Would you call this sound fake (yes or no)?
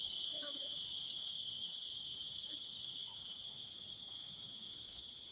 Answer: yes